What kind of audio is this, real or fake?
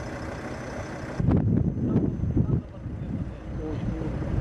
real